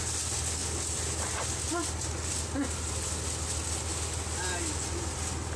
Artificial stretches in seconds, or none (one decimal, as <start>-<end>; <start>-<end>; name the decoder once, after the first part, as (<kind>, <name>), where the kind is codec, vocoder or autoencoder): none